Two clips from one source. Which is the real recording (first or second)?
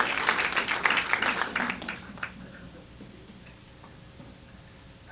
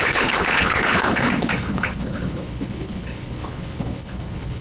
first